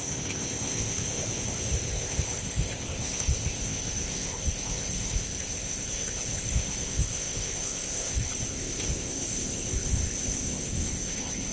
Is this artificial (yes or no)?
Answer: yes